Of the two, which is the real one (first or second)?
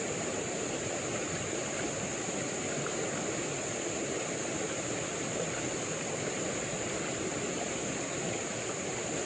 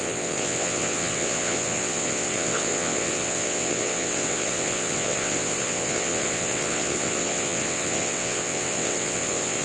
first